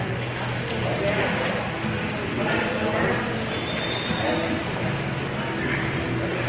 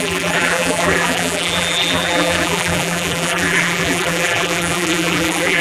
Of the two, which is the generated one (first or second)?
second